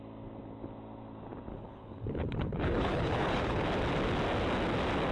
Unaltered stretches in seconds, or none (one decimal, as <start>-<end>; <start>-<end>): 0.0-1.5; 3.6-5.1

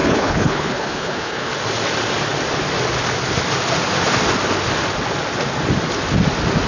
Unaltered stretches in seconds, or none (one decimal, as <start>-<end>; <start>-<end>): 1.5-6.7

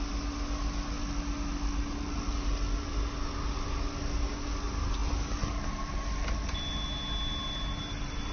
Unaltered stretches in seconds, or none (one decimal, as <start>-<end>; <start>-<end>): 0.0-8.3

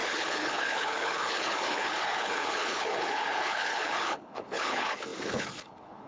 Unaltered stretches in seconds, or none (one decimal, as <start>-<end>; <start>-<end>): none

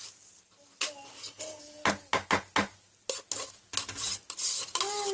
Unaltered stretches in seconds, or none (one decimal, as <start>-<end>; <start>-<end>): 0.0-1.1; 1.6-5.1

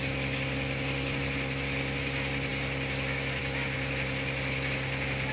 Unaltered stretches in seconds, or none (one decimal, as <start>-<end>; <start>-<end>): 0.0-5.3

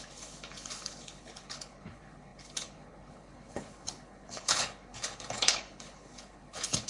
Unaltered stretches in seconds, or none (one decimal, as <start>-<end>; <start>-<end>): none